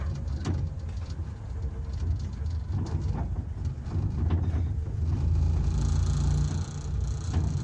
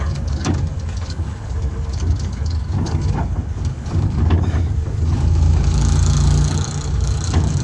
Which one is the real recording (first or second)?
first